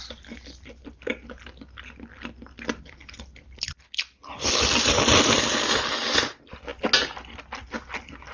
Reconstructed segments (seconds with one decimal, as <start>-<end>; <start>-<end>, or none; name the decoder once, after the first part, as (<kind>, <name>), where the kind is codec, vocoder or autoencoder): none

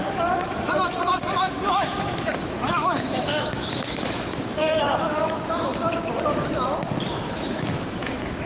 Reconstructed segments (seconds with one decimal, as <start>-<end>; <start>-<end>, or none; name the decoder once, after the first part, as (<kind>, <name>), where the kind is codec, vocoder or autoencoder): 0.0-5.7 (autoencoder, DAC-VAE); 7.1-8.5

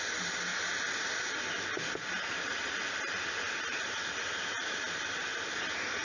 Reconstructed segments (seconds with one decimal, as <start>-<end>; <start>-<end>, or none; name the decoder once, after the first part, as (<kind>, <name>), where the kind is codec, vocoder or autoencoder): none

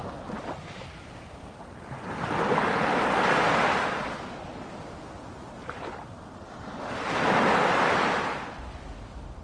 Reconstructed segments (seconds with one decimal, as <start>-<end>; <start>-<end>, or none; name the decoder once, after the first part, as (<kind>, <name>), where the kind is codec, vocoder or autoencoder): none

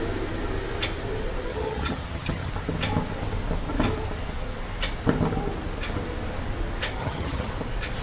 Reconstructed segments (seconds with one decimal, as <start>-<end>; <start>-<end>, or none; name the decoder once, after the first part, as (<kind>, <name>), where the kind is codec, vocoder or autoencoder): 1.5-2.5 (vocoder, HiFi-GAN); 7.0-7.5

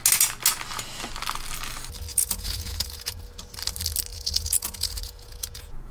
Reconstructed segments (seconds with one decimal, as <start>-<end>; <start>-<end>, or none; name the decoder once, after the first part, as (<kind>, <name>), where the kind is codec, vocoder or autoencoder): 2.1-3.2 (vocoder, Vocos); 4.1-5.9